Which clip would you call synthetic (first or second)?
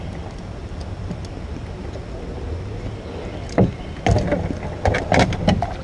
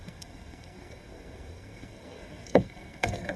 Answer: second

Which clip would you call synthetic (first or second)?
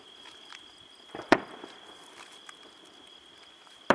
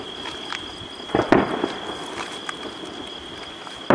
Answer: first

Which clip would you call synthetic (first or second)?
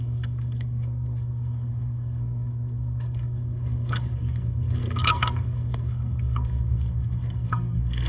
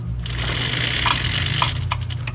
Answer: first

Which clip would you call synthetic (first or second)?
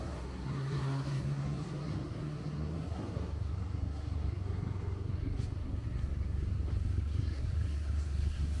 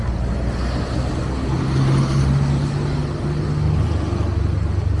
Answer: first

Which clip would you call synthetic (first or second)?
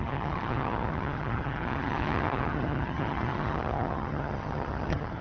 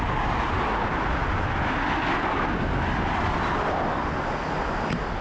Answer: first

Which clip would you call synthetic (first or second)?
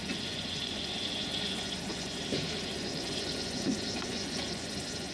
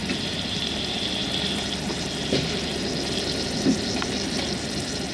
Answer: first